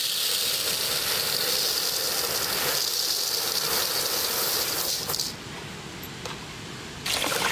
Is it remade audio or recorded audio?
recorded